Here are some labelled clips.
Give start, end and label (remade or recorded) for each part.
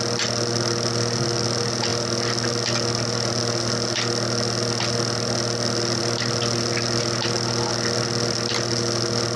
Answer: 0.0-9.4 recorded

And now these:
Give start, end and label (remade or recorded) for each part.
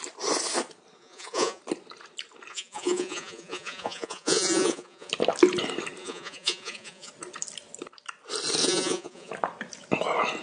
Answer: 0.0-1.0 recorded; 1.0-1.6 remade; 1.6-2.5 recorded; 2.5-5.1 remade; 5.1-6.0 recorded; 6.0-7.1 remade; 7.1-8.6 recorded; 8.6-9.3 remade; 9.3-10.4 recorded